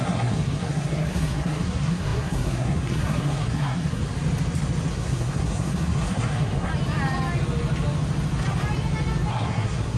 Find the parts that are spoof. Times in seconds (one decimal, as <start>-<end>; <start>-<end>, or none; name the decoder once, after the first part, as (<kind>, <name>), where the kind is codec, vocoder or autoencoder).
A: 0.0-4.0 (codec, SNAC); 4.9-6.7; 9.3-10.0